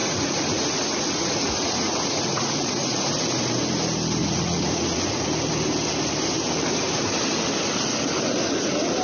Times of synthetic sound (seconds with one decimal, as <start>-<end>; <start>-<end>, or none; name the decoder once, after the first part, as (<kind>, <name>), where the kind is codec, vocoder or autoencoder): 0.0-3.2 (vocoder, Vocos); 4.2-5.2